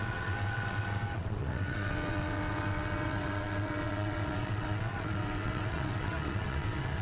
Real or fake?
fake